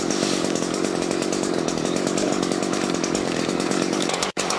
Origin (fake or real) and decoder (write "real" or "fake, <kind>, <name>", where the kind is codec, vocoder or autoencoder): fake, codec, DAC